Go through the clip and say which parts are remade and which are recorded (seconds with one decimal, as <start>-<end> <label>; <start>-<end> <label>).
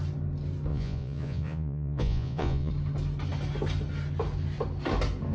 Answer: 0.0-0.7 recorded; 0.7-2.7 remade; 2.7-5.3 recorded